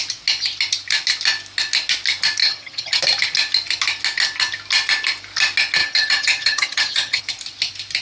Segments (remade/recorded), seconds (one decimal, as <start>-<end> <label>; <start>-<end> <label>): 0.0-2.4 recorded; 2.4-3.0 remade; 3.0-5.8 recorded; 5.8-7.2 remade; 7.2-8.0 recorded